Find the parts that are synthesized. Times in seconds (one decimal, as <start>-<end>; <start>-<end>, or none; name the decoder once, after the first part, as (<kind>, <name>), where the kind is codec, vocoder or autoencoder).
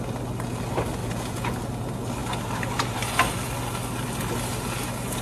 1.0-1.6 (vocoder, Vocos)